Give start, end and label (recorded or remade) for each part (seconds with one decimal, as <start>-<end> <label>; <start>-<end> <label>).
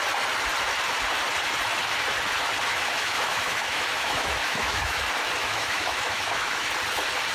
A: 0.0-2.7 recorded; 2.7-5.0 remade; 5.0-5.4 recorded; 5.4-6.7 remade; 6.7-7.3 recorded